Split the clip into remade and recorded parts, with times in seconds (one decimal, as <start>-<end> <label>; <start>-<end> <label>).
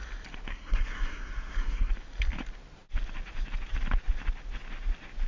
0.0-0.5 recorded; 0.5-1.9 remade; 1.9-5.3 recorded